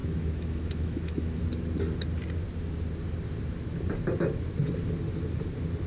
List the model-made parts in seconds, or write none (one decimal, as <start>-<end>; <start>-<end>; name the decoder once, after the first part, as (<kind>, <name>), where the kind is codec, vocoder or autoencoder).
0.0-1.4 (autoencoder, DAC-VAE)